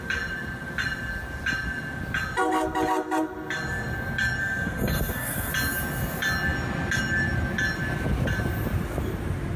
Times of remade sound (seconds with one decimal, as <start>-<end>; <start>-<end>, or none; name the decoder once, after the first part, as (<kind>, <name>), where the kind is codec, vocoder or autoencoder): 4.4-5.5 (codec, SNAC)